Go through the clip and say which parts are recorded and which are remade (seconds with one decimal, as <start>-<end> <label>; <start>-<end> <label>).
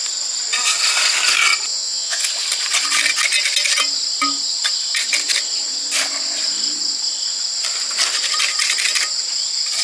0.0-1.7 recorded; 1.7-2.3 remade; 2.3-9.8 recorded